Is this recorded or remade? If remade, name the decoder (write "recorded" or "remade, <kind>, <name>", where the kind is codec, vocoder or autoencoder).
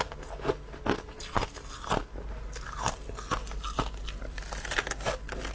recorded